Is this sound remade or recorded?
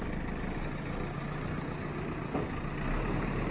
recorded